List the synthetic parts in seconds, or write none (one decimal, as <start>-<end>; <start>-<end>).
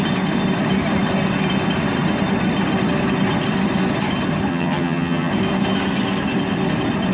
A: 4.5-5.3